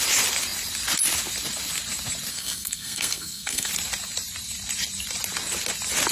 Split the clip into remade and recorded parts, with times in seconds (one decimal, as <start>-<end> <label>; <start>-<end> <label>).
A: 0.0-2.3 recorded; 2.3-3.7 remade; 3.7-6.1 recorded